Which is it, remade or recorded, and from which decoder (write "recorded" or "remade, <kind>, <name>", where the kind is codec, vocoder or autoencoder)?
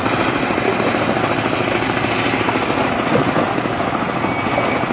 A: recorded